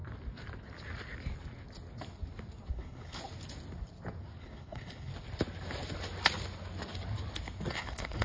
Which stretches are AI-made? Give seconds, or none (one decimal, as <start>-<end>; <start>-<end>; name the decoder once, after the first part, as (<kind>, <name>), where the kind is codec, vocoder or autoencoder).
2.7-3.2 (codec, HILCodec); 4.4-5.1; 7.7-8.2